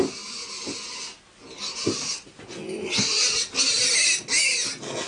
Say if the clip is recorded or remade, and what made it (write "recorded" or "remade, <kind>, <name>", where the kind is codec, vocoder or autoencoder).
recorded